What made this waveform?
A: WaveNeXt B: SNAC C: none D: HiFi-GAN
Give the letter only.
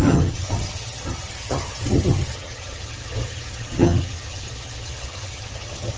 D